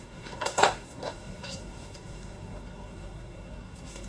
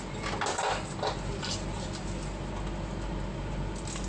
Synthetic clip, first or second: first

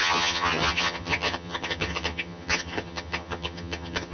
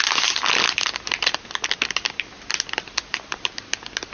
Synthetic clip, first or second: first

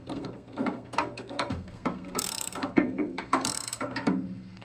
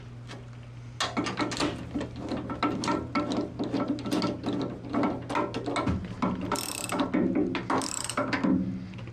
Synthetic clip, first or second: first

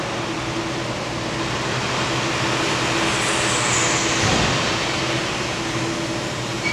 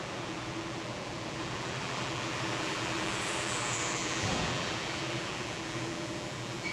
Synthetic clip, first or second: second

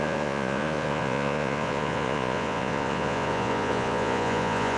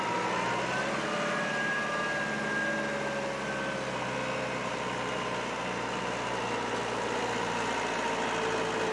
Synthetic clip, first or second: first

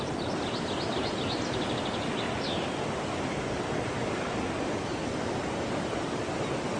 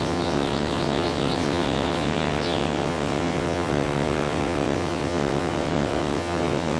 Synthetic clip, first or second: second